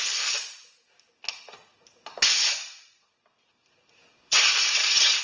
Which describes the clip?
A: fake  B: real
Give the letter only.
B